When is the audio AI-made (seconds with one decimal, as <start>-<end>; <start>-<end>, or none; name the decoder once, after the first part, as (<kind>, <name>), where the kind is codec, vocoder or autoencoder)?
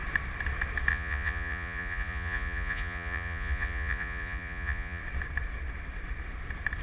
0.9-5.0 (vocoder, Vocos)